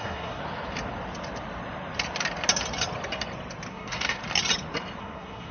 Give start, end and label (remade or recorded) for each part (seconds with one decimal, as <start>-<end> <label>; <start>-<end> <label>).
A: 0.0-0.4 remade; 0.4-3.7 recorded; 3.7-4.2 remade; 4.2-5.0 recorded; 5.0-5.5 remade